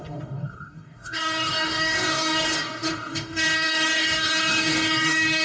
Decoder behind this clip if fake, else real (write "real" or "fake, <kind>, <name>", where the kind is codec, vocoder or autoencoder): fake, codec, DAC